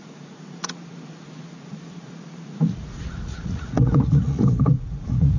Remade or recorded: remade